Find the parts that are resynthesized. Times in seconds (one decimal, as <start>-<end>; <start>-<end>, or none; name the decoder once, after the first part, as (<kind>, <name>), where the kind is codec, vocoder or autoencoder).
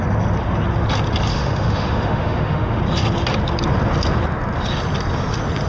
1.3-2.8 (autoencoder, DAC-VAE)